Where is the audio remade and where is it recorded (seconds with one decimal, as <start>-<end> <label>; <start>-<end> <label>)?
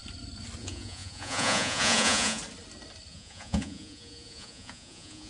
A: 0.0-0.6 recorded; 0.6-2.4 remade; 2.4-3.1 recorded; 3.1-5.3 remade